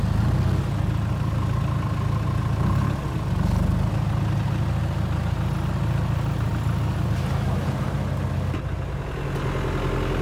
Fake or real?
real